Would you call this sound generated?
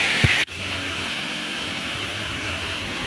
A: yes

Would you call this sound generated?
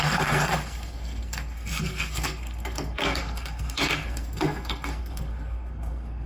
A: yes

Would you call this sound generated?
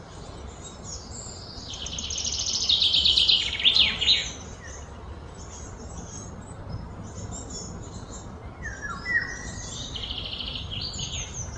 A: no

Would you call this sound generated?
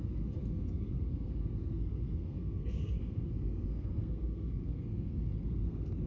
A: yes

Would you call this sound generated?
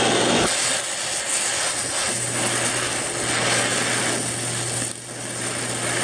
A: no